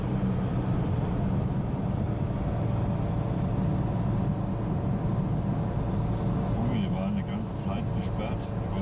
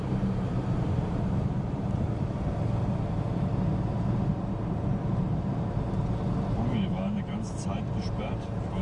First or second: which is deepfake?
second